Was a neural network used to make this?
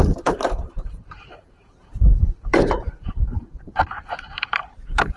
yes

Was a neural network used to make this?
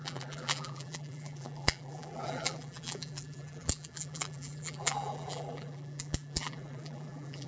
yes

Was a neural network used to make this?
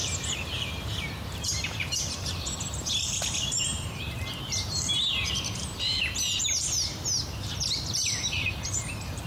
yes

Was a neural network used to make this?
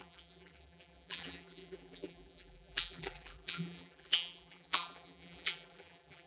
yes